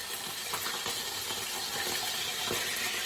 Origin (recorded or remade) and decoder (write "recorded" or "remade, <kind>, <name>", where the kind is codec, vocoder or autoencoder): recorded